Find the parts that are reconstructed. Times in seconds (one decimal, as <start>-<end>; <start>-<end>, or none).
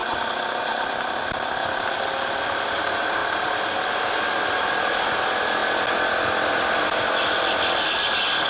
none